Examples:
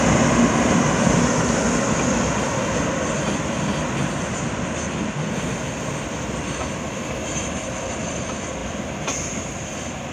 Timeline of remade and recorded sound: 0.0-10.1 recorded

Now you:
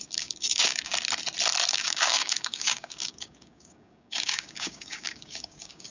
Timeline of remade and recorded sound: 0.0-0.9 remade; 0.9-1.7 recorded; 1.7-5.9 remade

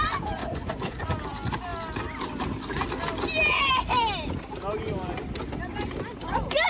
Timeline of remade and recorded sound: 0.0-0.4 recorded; 0.4-1.0 remade; 1.0-6.7 recorded

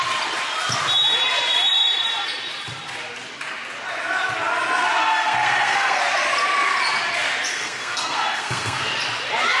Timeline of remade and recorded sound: 0.0-5.0 recorded; 5.0-6.0 remade; 6.0-7.5 recorded; 7.5-8.8 remade; 8.8-9.6 recorded